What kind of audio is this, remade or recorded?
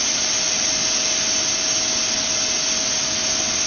recorded